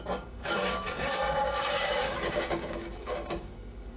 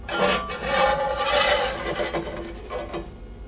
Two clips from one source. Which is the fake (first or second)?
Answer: first